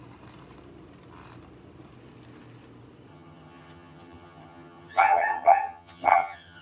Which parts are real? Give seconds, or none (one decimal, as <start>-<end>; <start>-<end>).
0.0-3.1